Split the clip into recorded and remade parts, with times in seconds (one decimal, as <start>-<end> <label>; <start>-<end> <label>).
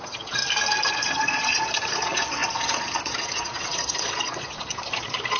0.0-0.4 remade; 0.4-0.9 recorded; 0.9-5.4 remade